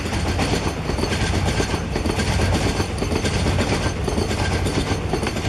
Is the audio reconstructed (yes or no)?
no